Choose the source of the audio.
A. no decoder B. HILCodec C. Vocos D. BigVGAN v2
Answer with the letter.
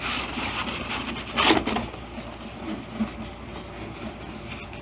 A